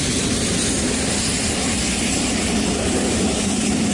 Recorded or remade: recorded